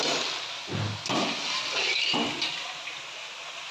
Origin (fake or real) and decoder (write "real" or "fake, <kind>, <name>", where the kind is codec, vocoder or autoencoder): real